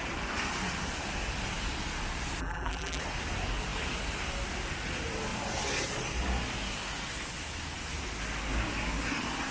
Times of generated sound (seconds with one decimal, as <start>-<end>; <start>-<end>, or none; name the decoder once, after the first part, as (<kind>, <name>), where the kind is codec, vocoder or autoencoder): 2.4-3.0 (vocoder, BigVGAN v2)